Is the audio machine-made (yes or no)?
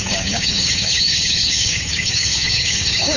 yes